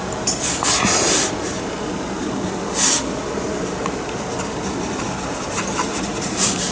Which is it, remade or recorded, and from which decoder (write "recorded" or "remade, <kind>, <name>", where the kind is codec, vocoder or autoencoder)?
recorded